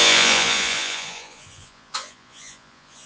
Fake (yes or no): yes